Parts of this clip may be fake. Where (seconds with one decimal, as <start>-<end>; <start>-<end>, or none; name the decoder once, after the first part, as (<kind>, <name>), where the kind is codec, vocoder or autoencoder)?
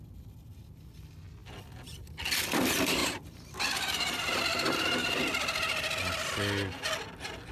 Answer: 3.0-5.2 (vocoder, BigVGAN v2)